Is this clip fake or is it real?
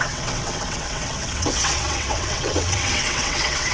fake